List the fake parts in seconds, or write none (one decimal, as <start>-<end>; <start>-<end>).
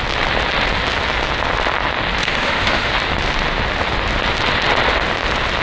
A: 2.2-2.9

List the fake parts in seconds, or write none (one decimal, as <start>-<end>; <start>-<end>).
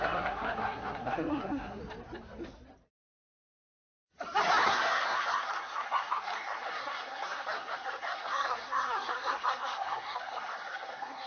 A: 0.0-1.8; 4.6-11.3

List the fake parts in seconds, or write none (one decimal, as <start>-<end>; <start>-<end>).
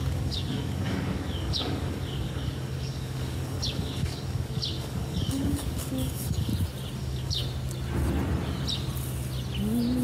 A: 0.0-6.5; 7.0-7.4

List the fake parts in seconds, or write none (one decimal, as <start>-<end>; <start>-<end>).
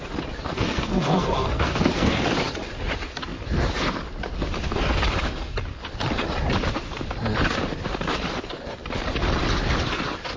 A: 0.5-2.2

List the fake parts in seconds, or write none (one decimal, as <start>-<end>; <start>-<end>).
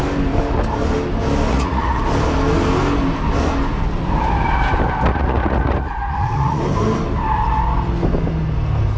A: 1.5-2.0; 5.1-6.6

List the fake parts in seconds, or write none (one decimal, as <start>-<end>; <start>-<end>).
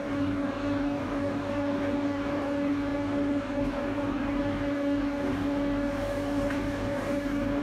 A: 0.0-7.6